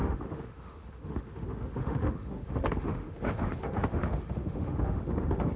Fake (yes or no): yes